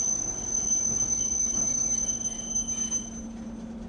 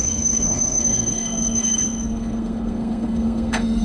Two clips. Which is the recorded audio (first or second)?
first